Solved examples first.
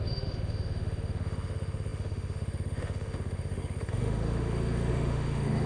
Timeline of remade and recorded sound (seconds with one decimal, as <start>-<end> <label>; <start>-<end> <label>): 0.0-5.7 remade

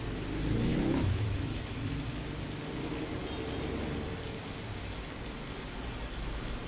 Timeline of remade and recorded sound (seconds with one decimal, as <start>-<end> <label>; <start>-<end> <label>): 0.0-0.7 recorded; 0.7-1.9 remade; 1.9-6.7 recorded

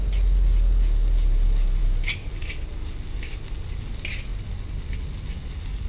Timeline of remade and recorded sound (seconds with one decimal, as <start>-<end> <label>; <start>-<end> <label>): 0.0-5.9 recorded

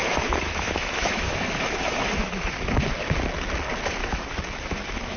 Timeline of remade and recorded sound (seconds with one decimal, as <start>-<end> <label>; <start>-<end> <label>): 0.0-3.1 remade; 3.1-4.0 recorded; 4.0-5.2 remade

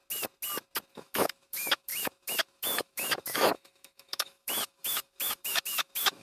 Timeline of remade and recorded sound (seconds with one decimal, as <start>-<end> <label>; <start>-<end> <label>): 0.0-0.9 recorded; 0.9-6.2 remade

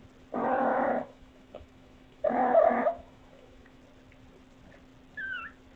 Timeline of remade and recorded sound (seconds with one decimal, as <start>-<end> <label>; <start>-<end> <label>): 0.0-0.7 recorded; 0.7-3.8 remade; 3.8-5.8 recorded